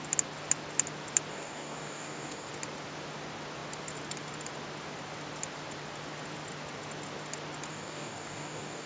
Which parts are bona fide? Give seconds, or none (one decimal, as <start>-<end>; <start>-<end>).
0.0-1.3; 2.5-7.7